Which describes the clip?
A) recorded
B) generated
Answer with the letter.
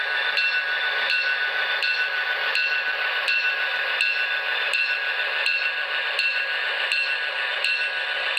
B